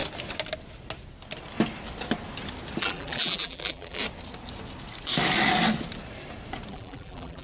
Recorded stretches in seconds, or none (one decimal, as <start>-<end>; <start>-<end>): 0.0-2.8; 4.0-6.7